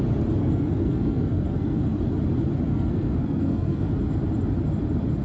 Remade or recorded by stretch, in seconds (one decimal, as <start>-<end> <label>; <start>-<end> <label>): 0.0-0.4 recorded; 0.4-1.8 remade; 1.8-2.7 recorded; 2.7-3.9 remade; 3.9-5.2 recorded